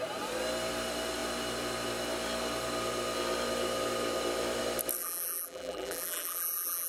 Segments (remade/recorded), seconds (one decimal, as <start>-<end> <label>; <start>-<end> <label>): 0.0-5.0 recorded; 5.0-6.9 remade